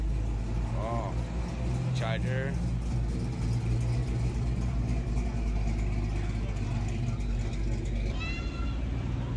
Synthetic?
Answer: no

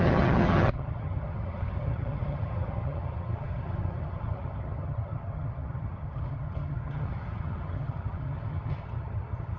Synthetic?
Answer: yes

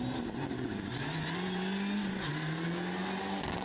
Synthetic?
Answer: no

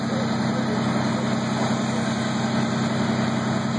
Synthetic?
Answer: no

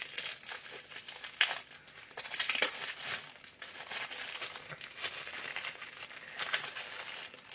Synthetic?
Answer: no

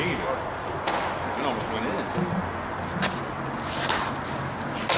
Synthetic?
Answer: no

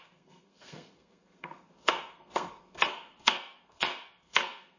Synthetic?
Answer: yes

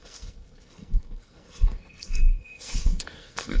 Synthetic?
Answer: yes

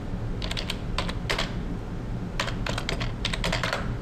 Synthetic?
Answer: no